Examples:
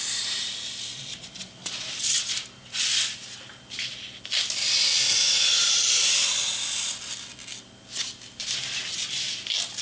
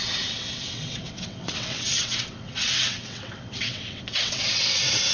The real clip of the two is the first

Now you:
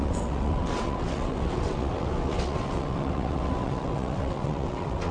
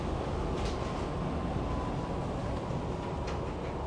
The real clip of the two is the second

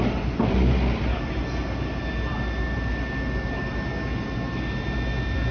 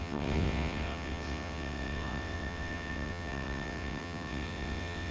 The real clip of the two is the first